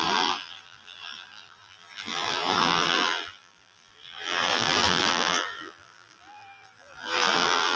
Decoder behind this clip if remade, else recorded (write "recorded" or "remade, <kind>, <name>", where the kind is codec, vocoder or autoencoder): remade, vocoder, BigVGAN v2